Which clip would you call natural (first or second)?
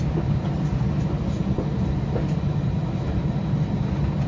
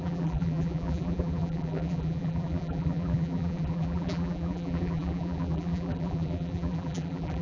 first